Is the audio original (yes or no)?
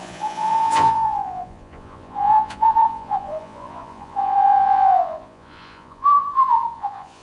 no